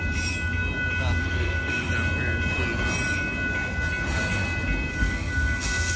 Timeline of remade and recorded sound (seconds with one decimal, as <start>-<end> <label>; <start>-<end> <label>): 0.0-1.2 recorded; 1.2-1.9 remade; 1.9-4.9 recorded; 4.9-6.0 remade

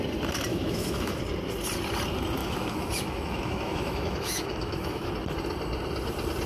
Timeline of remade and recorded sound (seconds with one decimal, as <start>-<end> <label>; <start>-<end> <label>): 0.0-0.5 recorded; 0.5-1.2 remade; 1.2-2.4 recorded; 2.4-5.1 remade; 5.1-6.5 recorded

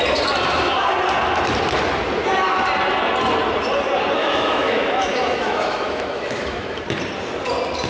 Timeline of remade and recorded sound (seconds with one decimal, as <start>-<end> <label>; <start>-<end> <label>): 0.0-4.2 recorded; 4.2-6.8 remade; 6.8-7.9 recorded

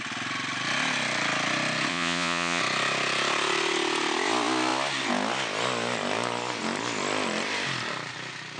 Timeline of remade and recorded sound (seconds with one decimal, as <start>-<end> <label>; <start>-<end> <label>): 0.0-1.9 recorded; 1.9-2.6 remade; 2.6-8.6 recorded